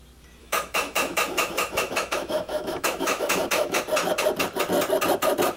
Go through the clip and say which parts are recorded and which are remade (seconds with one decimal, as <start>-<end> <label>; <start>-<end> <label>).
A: 0.0-0.4 recorded; 0.4-3.8 remade; 3.8-5.6 recorded